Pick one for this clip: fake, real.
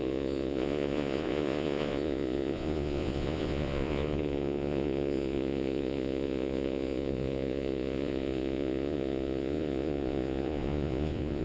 fake